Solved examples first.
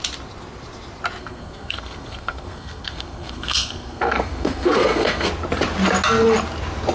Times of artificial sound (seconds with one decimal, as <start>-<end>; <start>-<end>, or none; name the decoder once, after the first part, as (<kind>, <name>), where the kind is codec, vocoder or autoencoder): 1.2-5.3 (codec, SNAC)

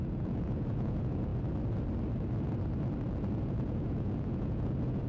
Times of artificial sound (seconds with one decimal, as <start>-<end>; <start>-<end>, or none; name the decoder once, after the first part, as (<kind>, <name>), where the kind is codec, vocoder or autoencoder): 0.0-1.3 (vocoder, Vocos); 3.5-5.1

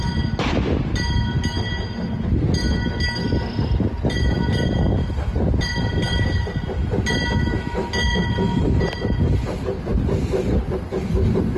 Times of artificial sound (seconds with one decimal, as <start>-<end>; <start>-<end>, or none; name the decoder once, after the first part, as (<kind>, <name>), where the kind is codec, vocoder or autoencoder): 9.9-10.5 (vocoder, BigVGAN v2)